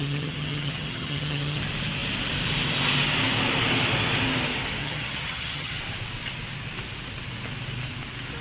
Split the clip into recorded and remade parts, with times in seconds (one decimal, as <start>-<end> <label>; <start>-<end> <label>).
0.0-1.6 remade; 1.6-4.8 recorded; 4.8-5.8 remade; 5.8-8.4 recorded